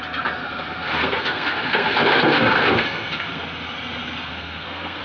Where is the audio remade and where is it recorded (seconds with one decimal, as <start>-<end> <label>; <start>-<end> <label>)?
0.0-0.4 recorded; 0.4-3.4 remade; 3.4-4.3 recorded; 4.3-5.0 remade